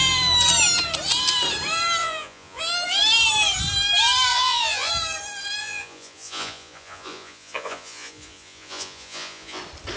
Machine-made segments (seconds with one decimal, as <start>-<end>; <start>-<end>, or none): 2.0-2.6; 4.3-4.9; 5.6-9.6